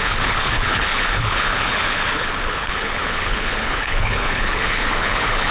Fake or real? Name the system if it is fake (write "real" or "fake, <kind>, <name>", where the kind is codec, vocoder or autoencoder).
fake, codec, HILCodec